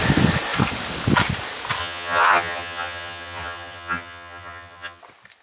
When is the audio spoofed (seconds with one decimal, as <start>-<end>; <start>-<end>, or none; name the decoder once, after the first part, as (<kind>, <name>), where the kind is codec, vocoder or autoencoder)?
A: 1.8-5.0 (vocoder, HiFi-GAN)